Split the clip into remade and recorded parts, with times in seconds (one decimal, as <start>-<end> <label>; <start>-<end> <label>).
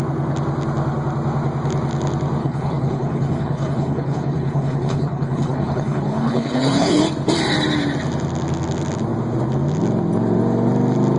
0.0-2.4 recorded; 2.4-7.0 remade; 7.0-11.2 recorded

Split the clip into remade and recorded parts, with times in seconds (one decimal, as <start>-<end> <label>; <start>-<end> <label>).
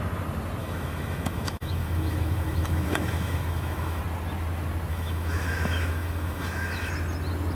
0.0-0.6 recorded; 0.6-4.0 remade; 4.0-4.9 recorded; 4.9-6.9 remade; 6.9-7.5 recorded